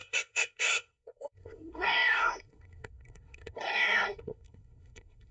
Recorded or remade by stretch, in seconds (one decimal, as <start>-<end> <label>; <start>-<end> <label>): 0.0-5.3 remade